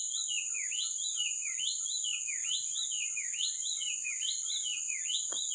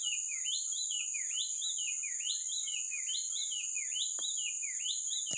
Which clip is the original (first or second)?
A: second